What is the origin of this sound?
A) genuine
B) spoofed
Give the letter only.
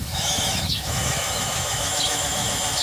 B